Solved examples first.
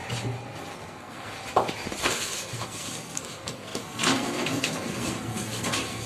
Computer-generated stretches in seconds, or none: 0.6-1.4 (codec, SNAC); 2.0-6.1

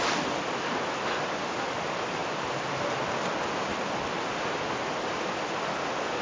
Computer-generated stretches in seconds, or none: none

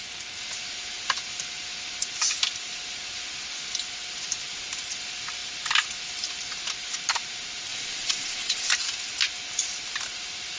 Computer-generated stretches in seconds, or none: 7.7-8.7 (vocoder, Vocos)

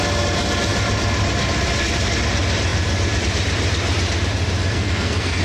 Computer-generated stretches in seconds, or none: 4.7-5.4 (codec, SNAC)

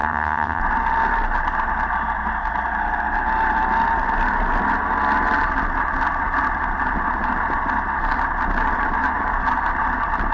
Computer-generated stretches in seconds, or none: 0.0-0.6 (vocoder, HiFi-GAN)

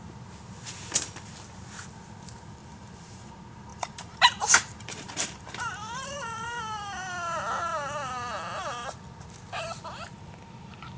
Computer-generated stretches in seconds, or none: 2.6-3.3 (vocoder, BigVGAN v2); 3.7-6.6